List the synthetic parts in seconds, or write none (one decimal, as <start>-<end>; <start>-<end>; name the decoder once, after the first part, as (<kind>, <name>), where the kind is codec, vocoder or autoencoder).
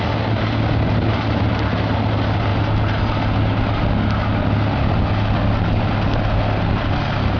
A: none